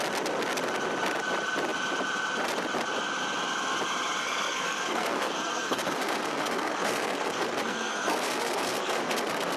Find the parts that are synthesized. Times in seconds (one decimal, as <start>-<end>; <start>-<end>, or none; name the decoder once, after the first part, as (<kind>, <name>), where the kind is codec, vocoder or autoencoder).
4.2-9.6 (codec, SNAC)